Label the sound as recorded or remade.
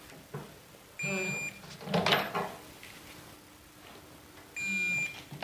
recorded